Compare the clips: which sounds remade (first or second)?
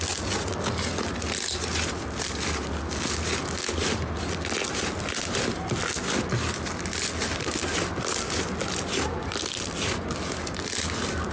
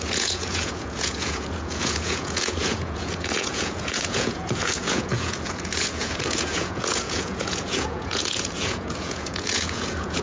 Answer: second